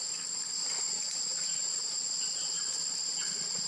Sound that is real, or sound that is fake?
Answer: real